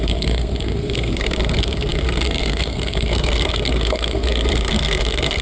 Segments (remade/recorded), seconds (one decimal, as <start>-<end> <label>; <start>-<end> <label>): 0.0-5.4 remade